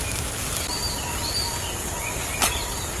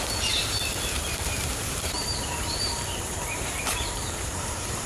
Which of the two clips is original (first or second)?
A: first